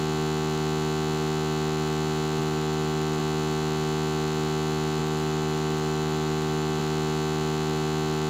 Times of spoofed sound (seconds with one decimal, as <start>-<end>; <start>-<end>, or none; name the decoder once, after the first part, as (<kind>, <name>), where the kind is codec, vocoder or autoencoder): 2.4-3.2 (vocoder, BigVGAN v2); 5.0-6.8